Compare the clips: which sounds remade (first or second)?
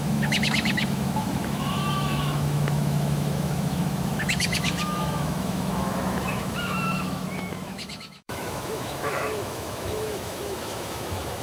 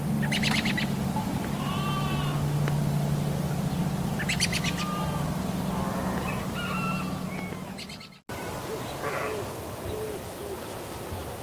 first